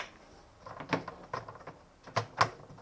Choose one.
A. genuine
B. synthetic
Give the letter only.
A